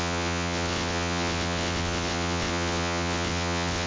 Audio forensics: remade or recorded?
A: remade